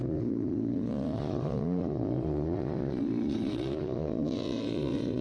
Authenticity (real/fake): fake